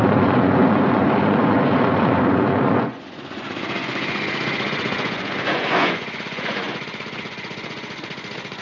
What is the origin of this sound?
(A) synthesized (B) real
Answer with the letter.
A